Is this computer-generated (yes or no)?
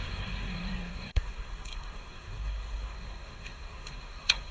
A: yes